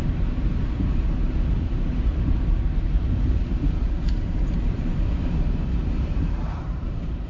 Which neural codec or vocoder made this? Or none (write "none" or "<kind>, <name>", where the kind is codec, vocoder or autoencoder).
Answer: vocoder, BigVGAN v2